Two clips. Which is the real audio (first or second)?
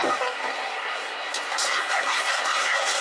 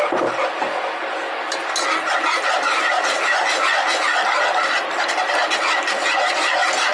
second